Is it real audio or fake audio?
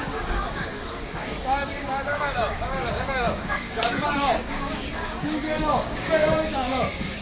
fake